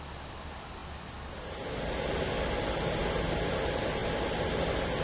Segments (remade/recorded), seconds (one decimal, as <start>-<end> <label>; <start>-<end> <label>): 0.0-5.0 recorded